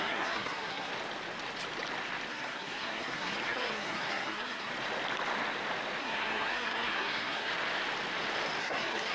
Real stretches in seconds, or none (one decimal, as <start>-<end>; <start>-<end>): 0.9-2.3; 4.7-6.0; 7.5-8.6